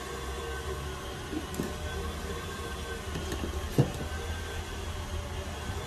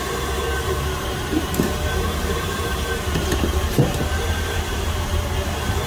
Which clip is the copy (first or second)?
second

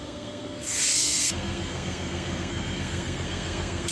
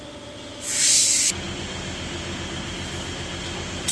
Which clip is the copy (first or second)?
first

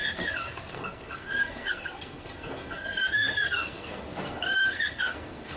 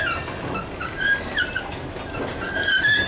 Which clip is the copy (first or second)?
first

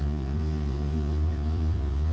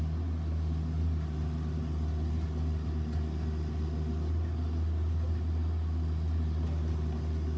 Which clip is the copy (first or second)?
first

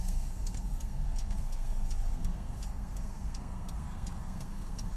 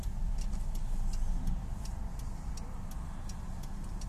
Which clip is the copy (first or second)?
first